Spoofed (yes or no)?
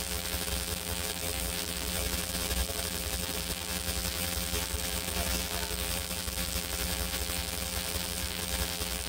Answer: yes